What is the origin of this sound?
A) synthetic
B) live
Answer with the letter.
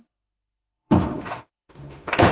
A